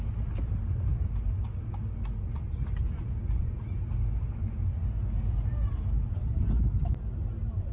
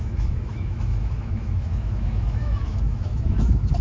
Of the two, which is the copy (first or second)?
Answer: second